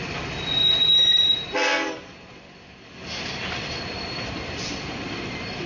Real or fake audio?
fake